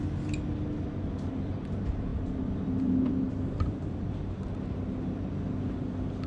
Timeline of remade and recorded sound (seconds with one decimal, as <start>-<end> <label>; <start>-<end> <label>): 0.0-2.1 recorded; 2.1-4.1 remade; 4.1-6.3 recorded